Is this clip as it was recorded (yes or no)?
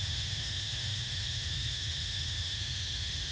no